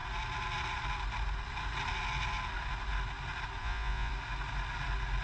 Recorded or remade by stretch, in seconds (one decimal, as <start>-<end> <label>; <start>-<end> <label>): 0.0-3.6 recorded; 3.6-4.1 remade; 4.1-5.2 recorded